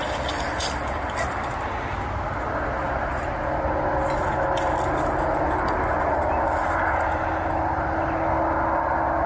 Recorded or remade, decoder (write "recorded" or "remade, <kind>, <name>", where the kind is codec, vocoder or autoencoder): recorded